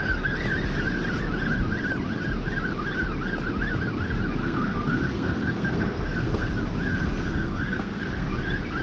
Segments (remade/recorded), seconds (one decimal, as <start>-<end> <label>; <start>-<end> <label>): 0.0-4.4 recorded; 4.4-6.5 remade; 6.5-6.9 recorded; 6.9-8.3 remade; 8.3-8.8 recorded